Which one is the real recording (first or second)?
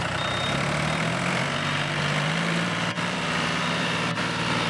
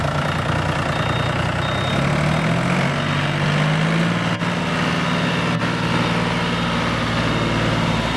second